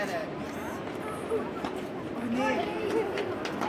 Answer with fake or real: real